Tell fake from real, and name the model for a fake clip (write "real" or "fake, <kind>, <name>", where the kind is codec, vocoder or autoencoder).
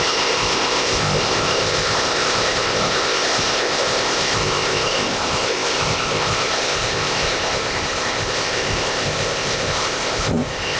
fake, codec, ZipCodec